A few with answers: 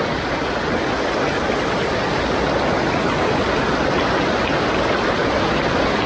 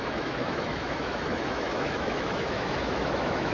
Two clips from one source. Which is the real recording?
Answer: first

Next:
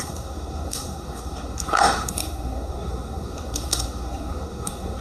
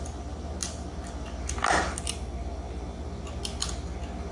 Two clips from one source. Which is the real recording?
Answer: second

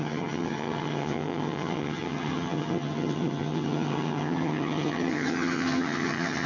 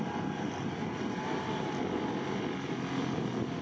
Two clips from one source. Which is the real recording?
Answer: second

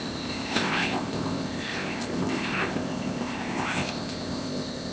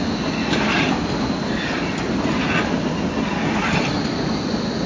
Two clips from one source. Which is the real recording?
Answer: second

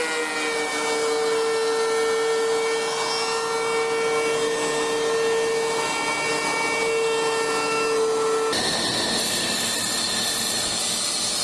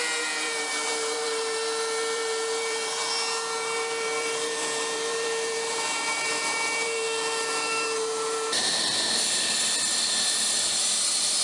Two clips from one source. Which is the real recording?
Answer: first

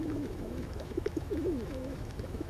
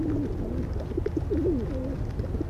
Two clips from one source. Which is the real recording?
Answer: second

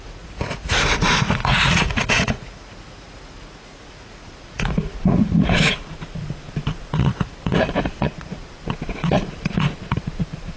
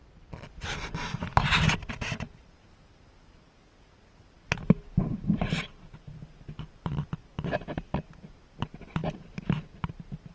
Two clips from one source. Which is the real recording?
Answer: second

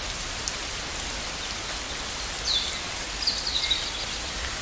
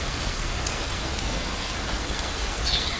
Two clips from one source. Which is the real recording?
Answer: first